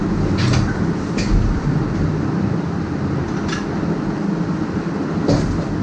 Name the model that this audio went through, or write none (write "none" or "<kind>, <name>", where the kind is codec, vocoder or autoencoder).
none